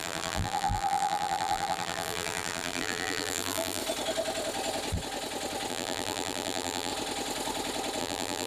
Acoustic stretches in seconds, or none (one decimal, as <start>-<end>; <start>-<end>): 3.8-5.7; 6.9-8.0